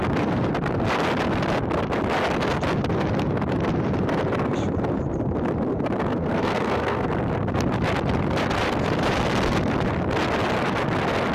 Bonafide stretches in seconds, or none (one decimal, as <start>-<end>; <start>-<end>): 0.0-6.1; 7.1-11.3